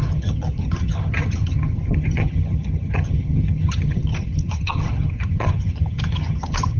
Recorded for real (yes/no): no